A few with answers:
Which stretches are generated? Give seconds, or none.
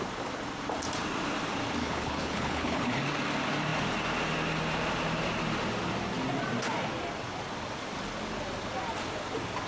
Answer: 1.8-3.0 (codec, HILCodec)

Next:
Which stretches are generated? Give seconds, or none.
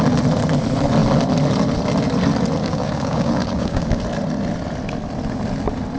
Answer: 2.6-4.0 (codec, DAC)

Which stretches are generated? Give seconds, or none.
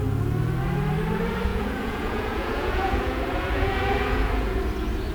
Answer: 1.5-4.6 (vocoder, Vocos)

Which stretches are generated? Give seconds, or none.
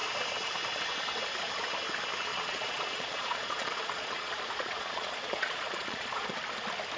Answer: 2.3-6.3 (vocoder, Vocos)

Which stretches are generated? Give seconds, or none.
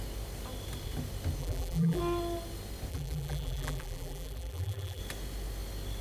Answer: 1.4-2.0 (vocoder, BigVGAN v2); 2.9-5.0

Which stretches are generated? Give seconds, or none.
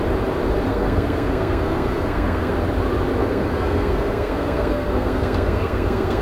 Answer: 0.7-2.5 (codec, SNAC); 3.2-6.2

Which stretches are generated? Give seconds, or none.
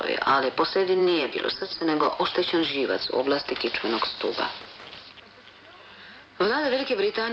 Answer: 1.0-2.2 (vocoder, Vocos)